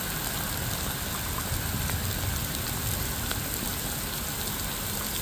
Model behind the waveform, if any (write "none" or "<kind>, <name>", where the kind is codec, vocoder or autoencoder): none